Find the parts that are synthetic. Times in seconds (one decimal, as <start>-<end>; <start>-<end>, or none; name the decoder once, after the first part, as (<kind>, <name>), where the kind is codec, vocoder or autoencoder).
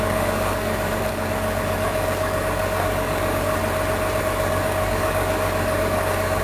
0.0-3.6 (codec, DAC); 4.2-6.4